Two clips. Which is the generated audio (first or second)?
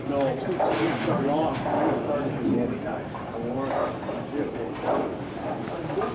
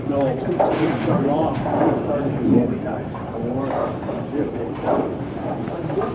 second